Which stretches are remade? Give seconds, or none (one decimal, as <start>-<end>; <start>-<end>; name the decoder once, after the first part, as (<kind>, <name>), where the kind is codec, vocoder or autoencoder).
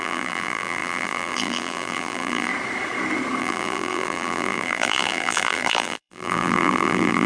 0.0-2.5 (vocoder, BigVGAN v2); 3.4-7.3